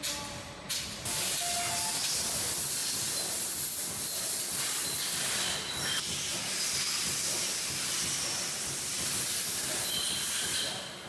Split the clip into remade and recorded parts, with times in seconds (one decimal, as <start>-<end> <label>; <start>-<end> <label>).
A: 0.0-2.8 recorded; 2.8-3.4 remade; 3.4-11.1 recorded